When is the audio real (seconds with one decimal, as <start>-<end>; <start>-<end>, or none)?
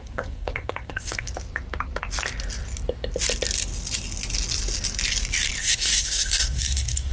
1.3-5.6